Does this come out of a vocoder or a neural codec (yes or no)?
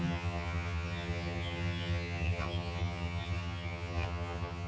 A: yes